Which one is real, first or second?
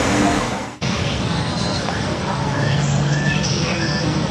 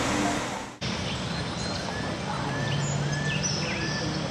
second